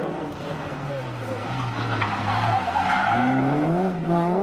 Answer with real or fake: fake